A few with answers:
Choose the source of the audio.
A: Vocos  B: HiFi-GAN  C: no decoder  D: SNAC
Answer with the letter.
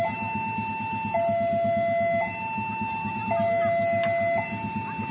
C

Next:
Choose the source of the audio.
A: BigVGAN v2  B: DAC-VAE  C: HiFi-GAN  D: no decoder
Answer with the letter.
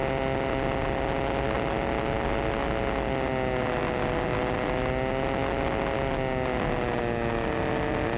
D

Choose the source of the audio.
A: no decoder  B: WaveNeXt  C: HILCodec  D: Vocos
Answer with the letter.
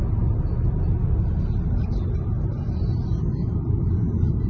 A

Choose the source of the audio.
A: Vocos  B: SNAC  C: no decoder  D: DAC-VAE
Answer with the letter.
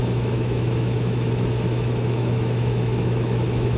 D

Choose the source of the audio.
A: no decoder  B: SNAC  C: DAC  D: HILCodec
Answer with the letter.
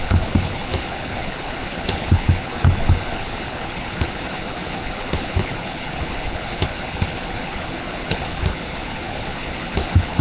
D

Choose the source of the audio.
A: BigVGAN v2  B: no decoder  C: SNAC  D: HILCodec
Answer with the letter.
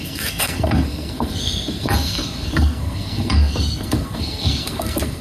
C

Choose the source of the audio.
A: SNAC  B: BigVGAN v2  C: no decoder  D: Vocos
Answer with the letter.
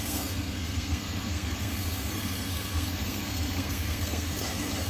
A